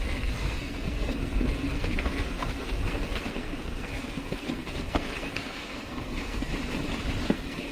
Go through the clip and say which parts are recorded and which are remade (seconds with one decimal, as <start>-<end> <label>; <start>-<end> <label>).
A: 0.0-6.5 remade; 6.5-7.3 recorded; 7.3-7.7 remade